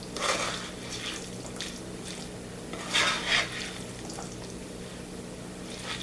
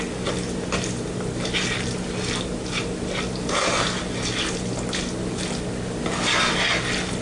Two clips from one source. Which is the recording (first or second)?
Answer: second